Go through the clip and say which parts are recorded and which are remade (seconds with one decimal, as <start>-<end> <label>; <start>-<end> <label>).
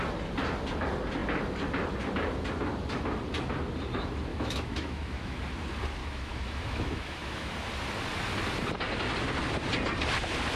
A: 0.0-4.3 recorded; 4.3-5.4 remade; 5.4-6.0 recorded; 6.0-7.5 remade; 7.5-10.6 recorded